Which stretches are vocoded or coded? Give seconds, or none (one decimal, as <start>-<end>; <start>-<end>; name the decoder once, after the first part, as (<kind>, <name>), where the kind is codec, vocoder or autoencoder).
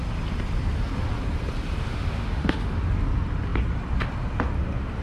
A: 1.8-2.8 (autoencoder, DAC-VAE)